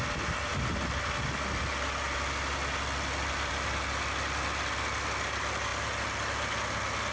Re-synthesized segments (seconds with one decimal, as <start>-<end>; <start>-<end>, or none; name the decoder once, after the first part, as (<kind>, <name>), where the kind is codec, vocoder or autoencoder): none